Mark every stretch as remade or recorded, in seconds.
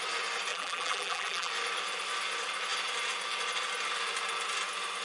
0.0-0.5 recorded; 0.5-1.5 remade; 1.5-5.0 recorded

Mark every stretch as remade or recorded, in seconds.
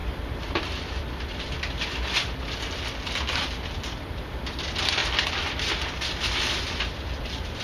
0.0-0.5 recorded; 0.5-1.3 remade; 1.3-3.8 recorded; 3.8-5.0 remade; 5.0-6.6 recorded; 6.6-7.6 remade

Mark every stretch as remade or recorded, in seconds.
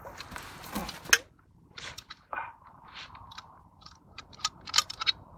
0.0-0.8 remade; 0.8-1.3 recorded; 1.3-5.4 remade